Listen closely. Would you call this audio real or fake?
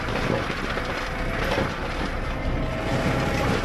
fake